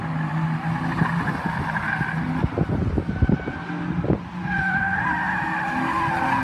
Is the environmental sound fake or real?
real